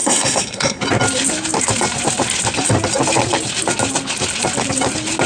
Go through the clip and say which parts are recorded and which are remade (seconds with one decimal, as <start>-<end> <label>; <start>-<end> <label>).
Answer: 0.0-0.8 remade; 0.8-5.3 recorded